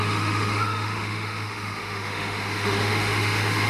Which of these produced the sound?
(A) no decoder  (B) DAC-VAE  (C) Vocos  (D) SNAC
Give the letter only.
B